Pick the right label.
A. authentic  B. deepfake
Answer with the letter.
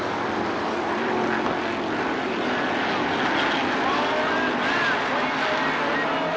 A